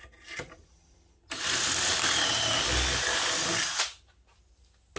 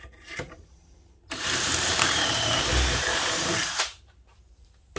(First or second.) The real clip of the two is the first